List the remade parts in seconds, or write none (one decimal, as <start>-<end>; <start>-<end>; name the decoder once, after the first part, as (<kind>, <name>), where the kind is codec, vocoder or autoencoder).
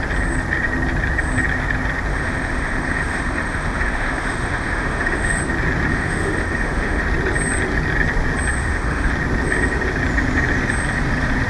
2.1-5.4 (autoencoder, DAC-VAE); 5.9-7.0; 8.6-9.1